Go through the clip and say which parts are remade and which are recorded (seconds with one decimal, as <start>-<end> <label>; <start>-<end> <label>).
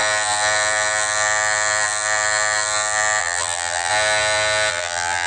0.0-3.2 recorded; 3.2-3.9 remade; 3.9-4.7 recorded; 4.7-5.3 remade